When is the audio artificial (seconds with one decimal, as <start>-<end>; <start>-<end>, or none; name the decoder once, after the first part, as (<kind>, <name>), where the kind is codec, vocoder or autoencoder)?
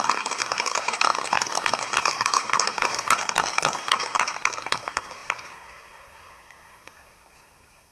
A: 0.0-7.9 (codec, SNAC)